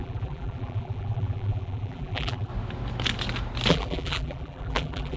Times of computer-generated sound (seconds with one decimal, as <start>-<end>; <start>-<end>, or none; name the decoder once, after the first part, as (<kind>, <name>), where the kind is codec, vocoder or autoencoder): 0.0-2.5 (vocoder, BigVGAN v2); 3.7-5.2